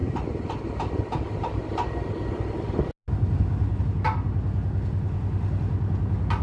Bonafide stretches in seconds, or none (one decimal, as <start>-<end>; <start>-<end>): 0.0-6.4